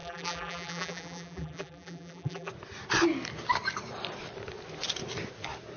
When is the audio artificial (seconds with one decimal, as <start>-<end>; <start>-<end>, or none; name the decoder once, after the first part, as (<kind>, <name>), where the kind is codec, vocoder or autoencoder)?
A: 0.0-2.5 (vocoder, BigVGAN v2)